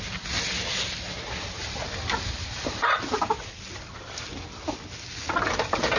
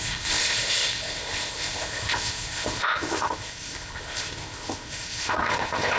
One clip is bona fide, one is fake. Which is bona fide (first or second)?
first